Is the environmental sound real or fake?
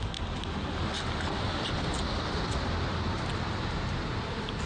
real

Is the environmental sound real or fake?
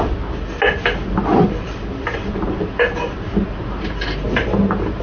real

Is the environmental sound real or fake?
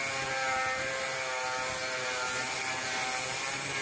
real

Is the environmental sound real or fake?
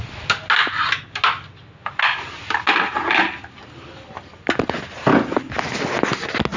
real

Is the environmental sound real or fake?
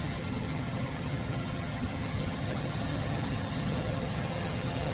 fake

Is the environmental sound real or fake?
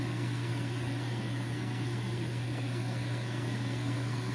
fake